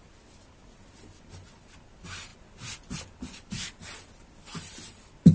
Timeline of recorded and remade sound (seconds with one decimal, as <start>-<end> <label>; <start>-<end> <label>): 0.0-5.3 recorded